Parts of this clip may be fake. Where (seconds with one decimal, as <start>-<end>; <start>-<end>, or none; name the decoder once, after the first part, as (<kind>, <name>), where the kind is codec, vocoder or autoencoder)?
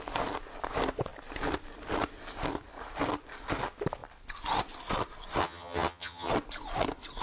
5.4-6.3 (vocoder, HiFi-GAN)